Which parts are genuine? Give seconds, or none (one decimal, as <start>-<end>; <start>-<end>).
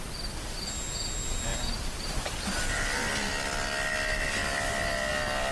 0.0-5.5